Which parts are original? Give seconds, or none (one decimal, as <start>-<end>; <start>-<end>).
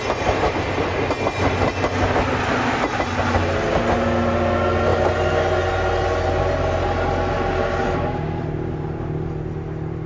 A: 0.0-10.1